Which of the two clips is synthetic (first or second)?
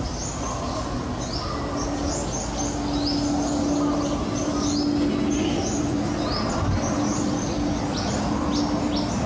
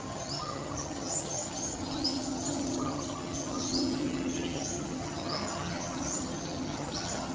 second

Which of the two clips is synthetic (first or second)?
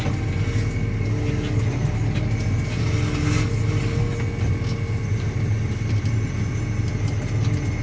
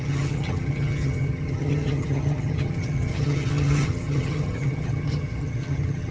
second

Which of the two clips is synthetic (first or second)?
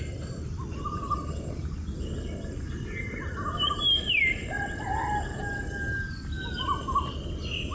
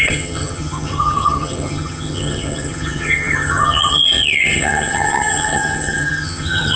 second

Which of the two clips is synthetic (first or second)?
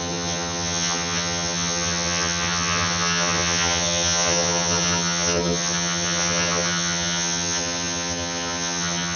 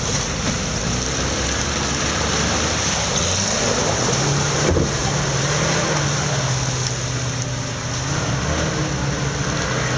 first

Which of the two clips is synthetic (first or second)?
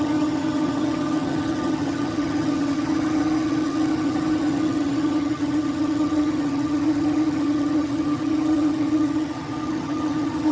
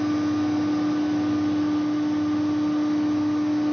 first